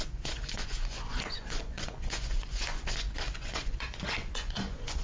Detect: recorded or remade remade